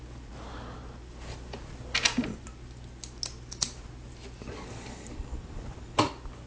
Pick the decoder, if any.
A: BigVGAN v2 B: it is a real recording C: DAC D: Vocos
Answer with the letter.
B